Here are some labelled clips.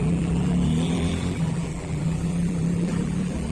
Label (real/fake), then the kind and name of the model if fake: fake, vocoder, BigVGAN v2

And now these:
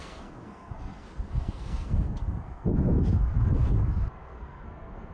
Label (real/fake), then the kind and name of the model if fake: fake, codec, SNAC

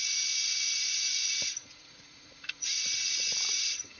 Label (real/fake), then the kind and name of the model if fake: fake, vocoder, Vocos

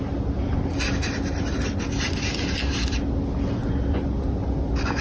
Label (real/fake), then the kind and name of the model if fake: real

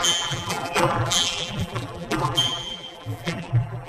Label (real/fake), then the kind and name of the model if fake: fake, vocoder, BigVGAN v2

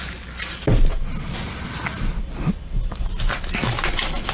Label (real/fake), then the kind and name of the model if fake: fake, vocoder, BigVGAN v2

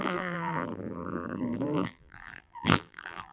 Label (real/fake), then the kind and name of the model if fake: fake, vocoder, BigVGAN v2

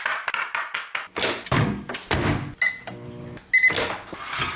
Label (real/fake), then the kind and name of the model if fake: real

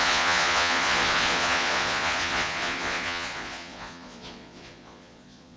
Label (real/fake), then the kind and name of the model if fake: fake, vocoder, Vocos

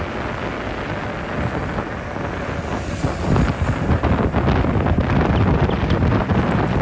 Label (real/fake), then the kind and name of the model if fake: real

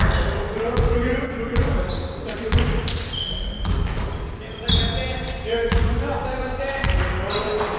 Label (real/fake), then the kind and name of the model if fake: real